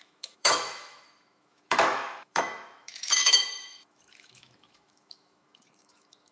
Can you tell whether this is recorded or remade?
remade